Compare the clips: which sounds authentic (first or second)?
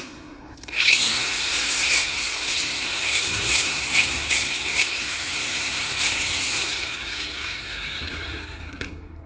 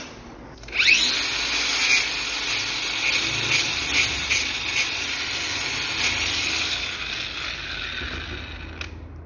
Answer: second